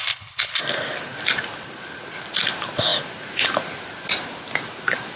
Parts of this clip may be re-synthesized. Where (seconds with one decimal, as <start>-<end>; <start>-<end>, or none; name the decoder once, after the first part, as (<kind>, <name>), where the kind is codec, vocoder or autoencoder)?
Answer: 0.0-0.6 (codec, HILCodec)